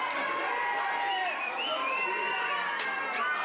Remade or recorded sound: recorded